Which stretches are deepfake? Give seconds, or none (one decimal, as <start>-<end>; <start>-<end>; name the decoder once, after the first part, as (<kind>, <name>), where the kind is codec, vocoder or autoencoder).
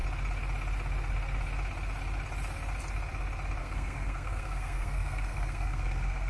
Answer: 3.6-6.3 (codec, SNAC)